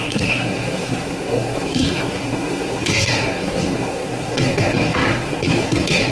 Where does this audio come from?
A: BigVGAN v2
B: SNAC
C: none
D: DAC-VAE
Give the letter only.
B